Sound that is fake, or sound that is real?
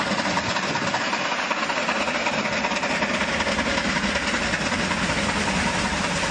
real